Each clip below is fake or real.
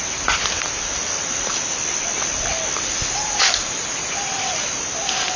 real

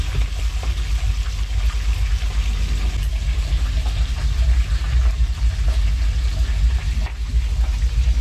real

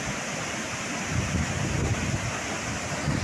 real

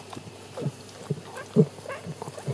real